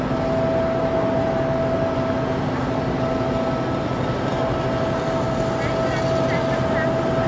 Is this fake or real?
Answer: real